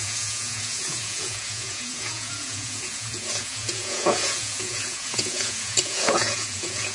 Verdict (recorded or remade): remade